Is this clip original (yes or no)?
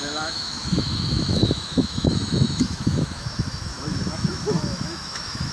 no